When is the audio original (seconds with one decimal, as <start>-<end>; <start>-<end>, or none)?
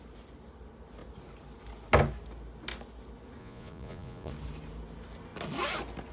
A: 0.0-3.4; 4.3-6.1